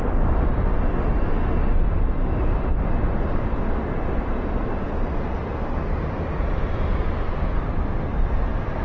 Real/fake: real